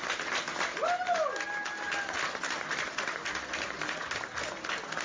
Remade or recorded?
recorded